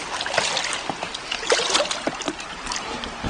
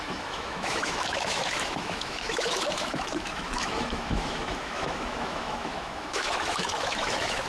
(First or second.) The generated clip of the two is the second